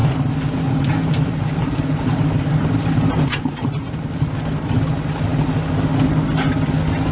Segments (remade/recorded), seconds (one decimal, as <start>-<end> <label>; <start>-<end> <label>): 0.0-4.3 remade; 4.3-7.1 recorded